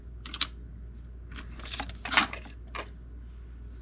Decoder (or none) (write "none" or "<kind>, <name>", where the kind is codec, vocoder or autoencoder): none